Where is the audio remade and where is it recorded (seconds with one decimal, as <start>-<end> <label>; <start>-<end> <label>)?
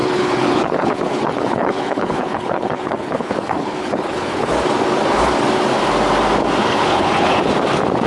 0.0-4.5 remade; 4.5-6.7 recorded; 6.7-7.5 remade; 7.5-8.1 recorded